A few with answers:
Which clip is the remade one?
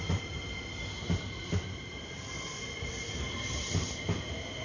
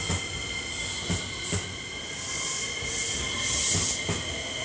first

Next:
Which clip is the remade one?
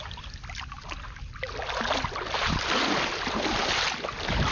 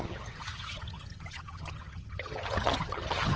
second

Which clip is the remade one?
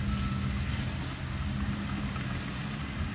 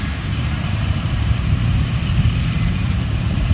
second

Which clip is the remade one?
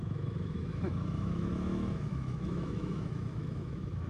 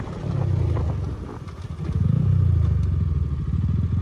first